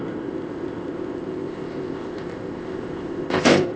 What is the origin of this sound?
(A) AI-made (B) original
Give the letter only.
A